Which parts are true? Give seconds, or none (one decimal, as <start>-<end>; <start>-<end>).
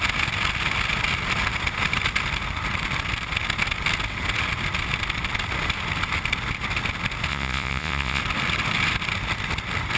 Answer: 0.0-7.3; 8.2-10.0